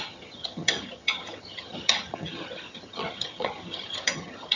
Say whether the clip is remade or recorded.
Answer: remade